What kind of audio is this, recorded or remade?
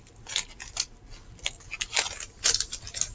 recorded